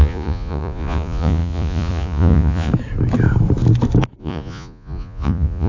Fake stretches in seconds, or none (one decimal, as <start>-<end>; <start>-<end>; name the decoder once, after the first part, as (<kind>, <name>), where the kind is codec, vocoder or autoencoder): 0.0-2.7 (vocoder, Vocos); 4.2-5.7